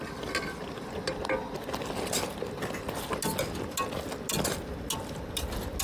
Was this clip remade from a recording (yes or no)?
no